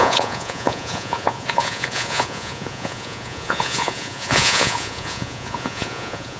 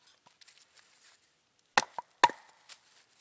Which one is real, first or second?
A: second